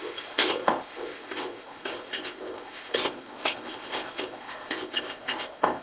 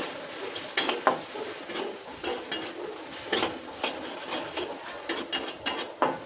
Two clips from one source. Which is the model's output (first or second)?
first